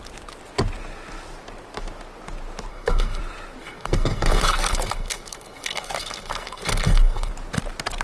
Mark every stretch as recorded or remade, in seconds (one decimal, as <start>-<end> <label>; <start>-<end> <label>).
0.0-2.7 recorded; 2.7-3.2 remade; 3.2-3.6 recorded; 3.6-7.3 remade; 7.3-8.0 recorded